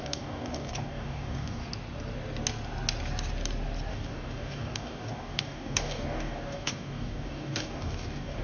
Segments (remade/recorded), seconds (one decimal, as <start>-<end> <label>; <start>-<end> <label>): 0.0-1.6 remade; 1.6-3.9 recorded; 3.9-8.4 remade